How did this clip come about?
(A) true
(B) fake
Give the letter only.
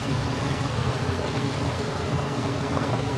B